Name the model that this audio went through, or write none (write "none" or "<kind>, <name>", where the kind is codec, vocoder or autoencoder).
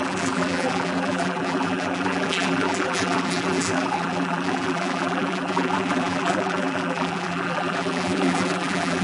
vocoder, BigVGAN v2